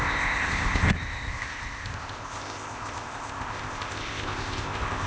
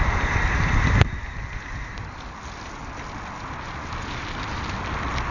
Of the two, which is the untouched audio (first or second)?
second